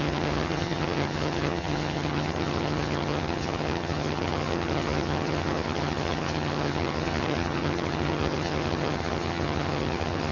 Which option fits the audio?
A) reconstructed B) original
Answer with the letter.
A